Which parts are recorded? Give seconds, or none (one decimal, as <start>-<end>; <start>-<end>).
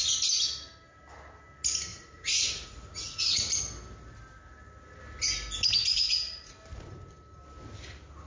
0.0-1.9; 3.6-5.8; 6.5-8.3